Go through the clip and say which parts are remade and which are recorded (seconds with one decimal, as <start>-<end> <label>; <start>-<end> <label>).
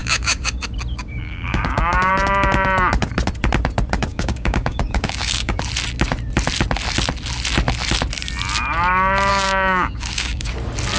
0.0-0.6 remade; 0.6-1.0 recorded; 1.0-2.1 remade; 2.1-4.1 recorded; 4.1-5.6 remade; 5.6-9.3 recorded; 9.3-10.5 remade; 10.5-11.0 recorded